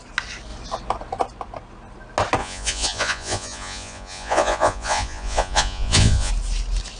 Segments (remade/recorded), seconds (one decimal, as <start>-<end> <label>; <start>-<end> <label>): 0.0-2.4 recorded; 2.4-6.3 remade; 6.3-7.0 recorded